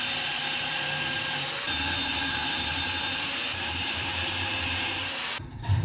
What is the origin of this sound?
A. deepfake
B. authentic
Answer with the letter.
A